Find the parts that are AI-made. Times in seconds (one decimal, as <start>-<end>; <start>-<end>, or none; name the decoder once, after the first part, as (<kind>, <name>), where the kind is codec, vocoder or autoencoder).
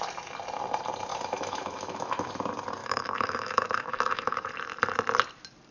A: 1.1-2.3 (autoencoder, DAC-VAE); 2.8-4.5